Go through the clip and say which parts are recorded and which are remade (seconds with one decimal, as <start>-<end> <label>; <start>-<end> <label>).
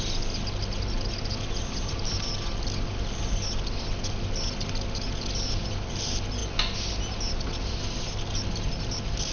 0.0-9.3 recorded